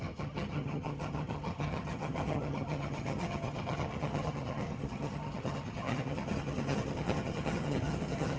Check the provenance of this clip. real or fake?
fake